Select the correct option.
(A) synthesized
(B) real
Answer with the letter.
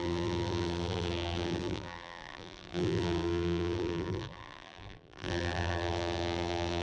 A